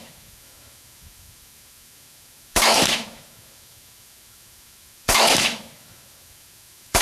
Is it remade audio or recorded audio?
remade